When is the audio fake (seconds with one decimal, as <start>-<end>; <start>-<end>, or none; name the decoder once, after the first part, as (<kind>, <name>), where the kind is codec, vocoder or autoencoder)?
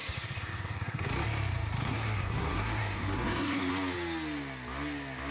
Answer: 0.0-1.1 (codec, SNAC); 1.8-3.7